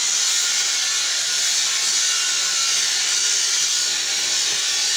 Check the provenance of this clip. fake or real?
real